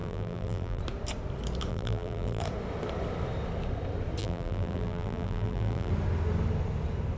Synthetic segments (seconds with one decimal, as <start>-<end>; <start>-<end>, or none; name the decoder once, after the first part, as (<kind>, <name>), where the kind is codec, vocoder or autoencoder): 0.0-0.8 (vocoder, BigVGAN v2); 1.7-2.4; 4.2-5.9